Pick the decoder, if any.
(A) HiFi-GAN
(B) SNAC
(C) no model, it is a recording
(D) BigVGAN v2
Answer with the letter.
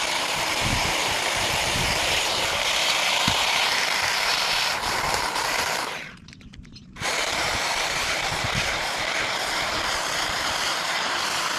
D